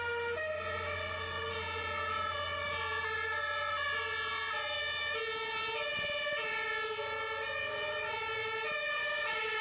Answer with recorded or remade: recorded